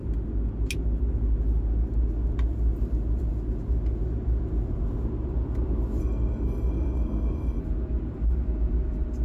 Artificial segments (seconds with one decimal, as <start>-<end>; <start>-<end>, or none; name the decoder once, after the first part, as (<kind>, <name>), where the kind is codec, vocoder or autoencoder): 6.0-7.6 (codec, SNAC)